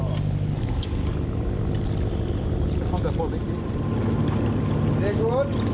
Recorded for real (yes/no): yes